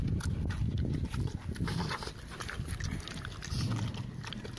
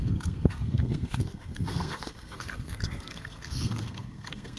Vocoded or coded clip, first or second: second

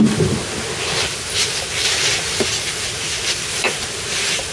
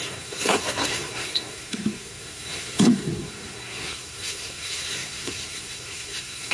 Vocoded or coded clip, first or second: second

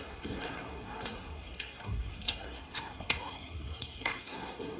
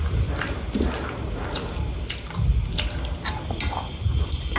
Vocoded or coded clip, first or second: first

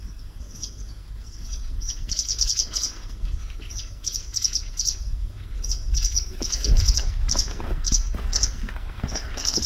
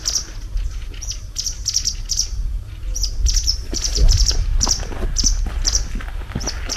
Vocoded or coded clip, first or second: first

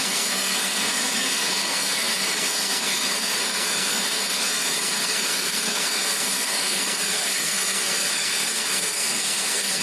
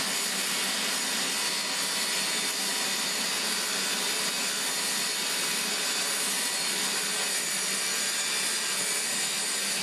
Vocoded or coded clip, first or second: first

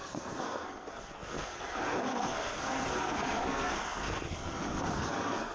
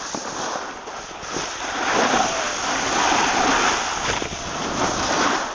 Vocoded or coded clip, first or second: first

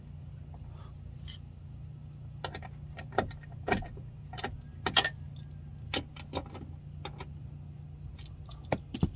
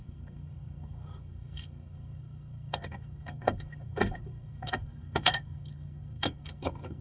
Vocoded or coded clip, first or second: second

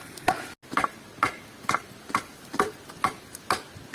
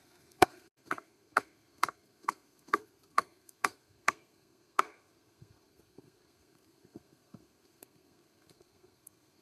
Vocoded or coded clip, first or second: second